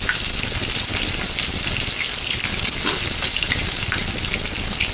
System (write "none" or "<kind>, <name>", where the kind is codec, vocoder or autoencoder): none